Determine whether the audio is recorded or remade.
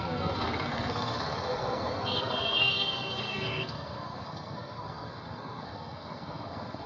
remade